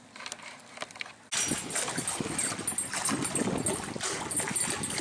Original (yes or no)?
yes